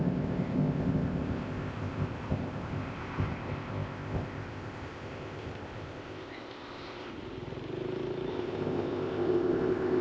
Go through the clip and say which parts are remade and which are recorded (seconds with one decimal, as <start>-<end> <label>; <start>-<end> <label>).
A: 0.0-7.1 remade; 7.1-8.3 recorded; 8.3-10.0 remade